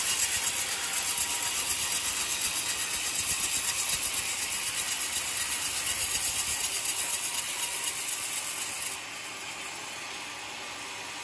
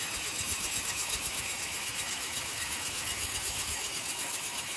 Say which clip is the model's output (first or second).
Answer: second